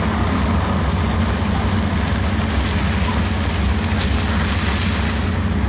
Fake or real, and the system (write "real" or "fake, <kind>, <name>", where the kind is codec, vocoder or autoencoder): real